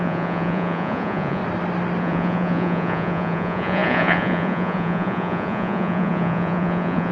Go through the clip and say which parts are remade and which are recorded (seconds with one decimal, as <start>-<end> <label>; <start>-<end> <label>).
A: 0.0-1.4 remade; 1.4-2.0 recorded; 2.0-7.1 remade